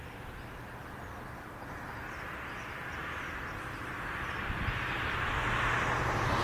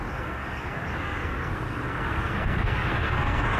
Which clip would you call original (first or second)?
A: first